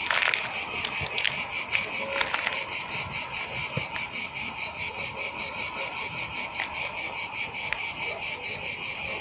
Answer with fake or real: real